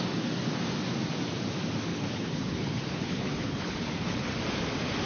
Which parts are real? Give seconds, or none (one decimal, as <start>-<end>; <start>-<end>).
0.0-1.9; 4.3-5.0